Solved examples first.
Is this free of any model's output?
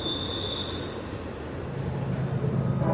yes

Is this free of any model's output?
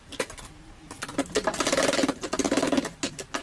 yes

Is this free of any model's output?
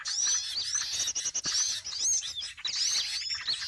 yes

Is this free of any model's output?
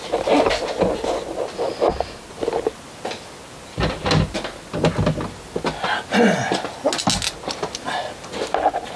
yes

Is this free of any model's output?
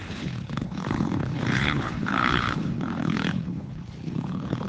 no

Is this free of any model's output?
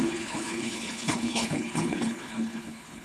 no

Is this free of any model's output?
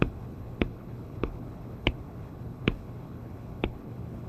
no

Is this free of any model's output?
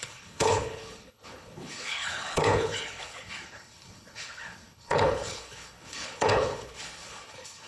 no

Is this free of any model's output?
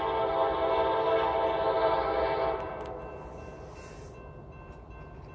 yes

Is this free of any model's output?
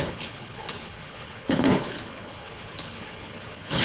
no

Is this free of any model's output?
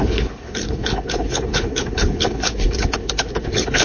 no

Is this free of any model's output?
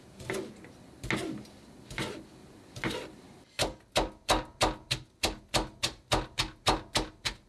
yes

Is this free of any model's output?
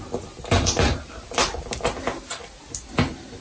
yes